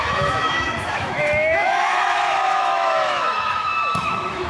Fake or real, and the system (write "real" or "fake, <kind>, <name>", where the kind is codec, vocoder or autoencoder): fake, autoencoder, DAC-VAE